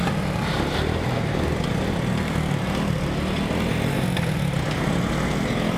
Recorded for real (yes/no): yes